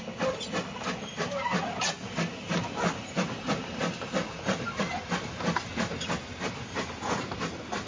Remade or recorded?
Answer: recorded